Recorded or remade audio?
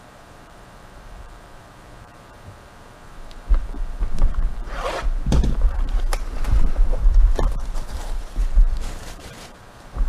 remade